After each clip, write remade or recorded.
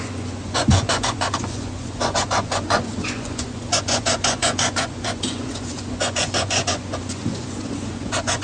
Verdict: remade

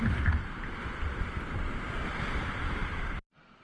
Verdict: remade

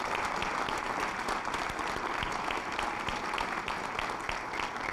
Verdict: recorded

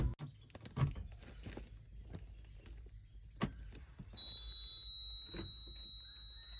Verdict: recorded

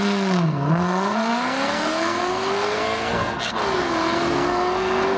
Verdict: remade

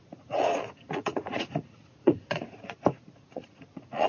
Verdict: remade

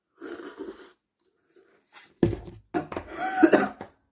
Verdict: recorded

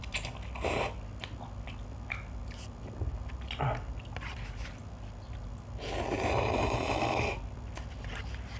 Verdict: recorded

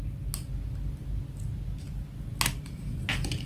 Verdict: recorded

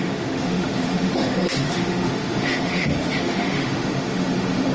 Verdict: remade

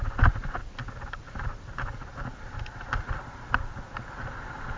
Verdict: remade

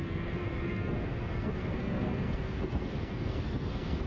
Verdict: remade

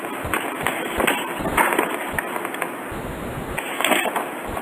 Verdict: recorded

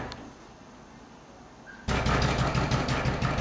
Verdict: recorded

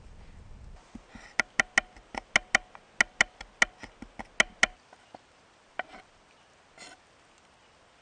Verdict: recorded